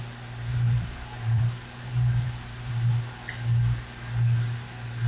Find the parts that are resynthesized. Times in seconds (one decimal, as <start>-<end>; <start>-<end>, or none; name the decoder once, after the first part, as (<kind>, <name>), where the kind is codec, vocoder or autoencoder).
0.5-2.7 (vocoder, BigVGAN v2)

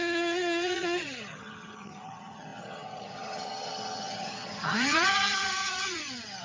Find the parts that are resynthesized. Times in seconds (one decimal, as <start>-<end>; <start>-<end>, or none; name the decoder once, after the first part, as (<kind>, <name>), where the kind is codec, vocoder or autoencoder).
0.0-6.4 (vocoder, HiFi-GAN)

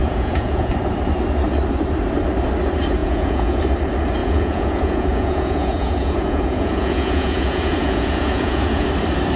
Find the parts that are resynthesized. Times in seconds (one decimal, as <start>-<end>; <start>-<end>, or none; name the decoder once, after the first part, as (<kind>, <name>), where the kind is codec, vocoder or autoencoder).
0.0-0.7 (vocoder, Vocos); 3.0-3.6; 4.2-8.9

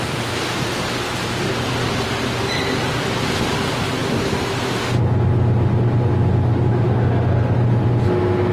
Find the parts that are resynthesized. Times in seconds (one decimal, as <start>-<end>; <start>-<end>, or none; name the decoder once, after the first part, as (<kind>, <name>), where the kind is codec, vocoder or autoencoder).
none

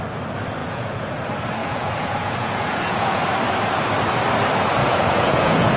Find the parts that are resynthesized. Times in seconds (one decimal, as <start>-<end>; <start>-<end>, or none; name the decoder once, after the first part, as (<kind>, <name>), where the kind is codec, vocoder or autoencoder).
0.6-1.2 (vocoder, Vocos); 1.6-3.2; 4.8-5.8

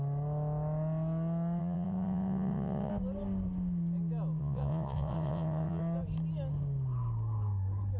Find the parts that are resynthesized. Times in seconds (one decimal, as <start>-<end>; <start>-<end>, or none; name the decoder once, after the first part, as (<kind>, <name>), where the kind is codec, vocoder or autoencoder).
1.6-2.9 (vocoder, WaveNeXt); 4.4-5.8